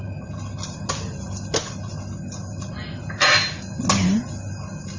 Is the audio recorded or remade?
recorded